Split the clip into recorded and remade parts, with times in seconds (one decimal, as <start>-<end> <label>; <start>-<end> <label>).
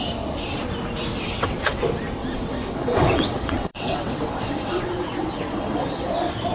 0.0-1.1 recorded; 1.1-1.8 remade; 1.8-2.2 recorded; 2.2-6.1 remade; 6.1-6.5 recorded